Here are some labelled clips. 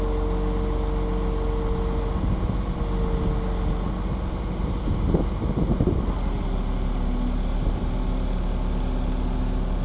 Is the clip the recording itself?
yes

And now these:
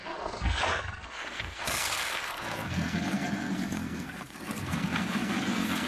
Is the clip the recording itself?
no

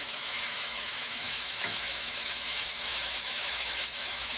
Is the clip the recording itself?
no